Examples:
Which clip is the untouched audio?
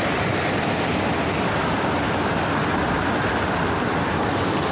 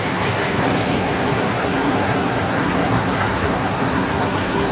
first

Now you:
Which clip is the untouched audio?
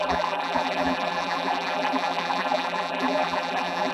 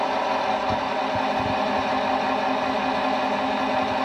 second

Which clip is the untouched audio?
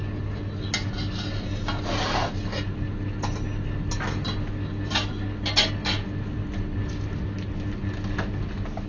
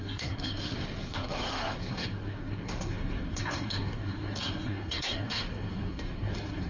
first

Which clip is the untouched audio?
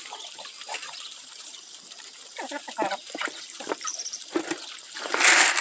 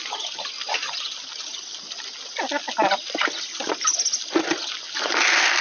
second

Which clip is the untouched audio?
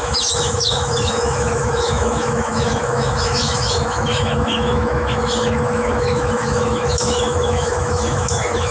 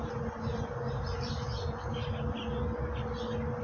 second